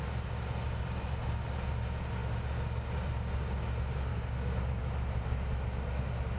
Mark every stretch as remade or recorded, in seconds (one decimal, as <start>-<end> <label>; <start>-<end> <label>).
0.0-4.1 recorded; 4.1-4.8 remade; 4.8-6.4 recorded